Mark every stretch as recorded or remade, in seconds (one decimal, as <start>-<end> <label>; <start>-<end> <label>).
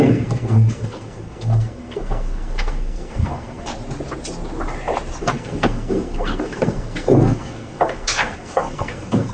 0.0-3.7 remade; 3.7-5.2 recorded; 5.2-9.3 remade